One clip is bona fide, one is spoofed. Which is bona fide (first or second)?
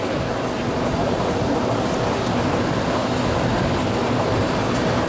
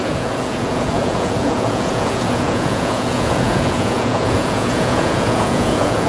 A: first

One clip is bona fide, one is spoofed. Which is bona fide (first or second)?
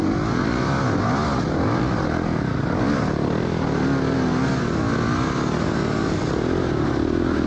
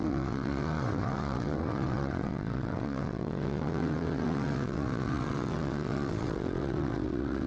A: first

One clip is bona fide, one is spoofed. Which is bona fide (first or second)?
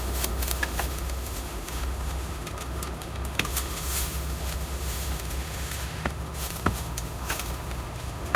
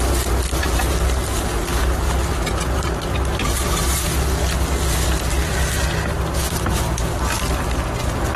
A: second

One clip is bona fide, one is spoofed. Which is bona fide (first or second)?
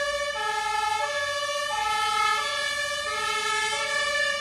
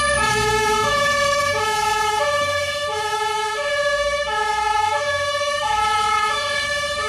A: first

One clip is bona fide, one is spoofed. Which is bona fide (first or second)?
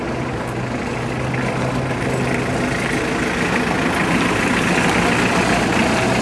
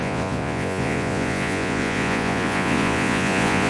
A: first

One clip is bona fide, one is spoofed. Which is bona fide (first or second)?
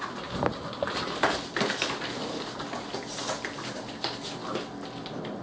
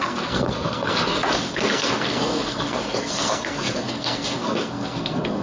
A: first